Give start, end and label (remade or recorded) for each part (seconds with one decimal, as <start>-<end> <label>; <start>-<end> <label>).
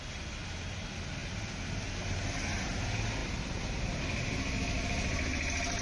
0.0-3.2 recorded; 3.2-4.0 remade; 4.0-5.8 recorded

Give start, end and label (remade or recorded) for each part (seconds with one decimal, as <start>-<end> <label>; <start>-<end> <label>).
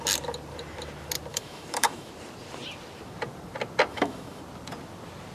0.0-1.3 recorded; 1.3-2.1 remade; 2.1-3.9 recorded; 3.9-4.4 remade; 4.4-5.3 recorded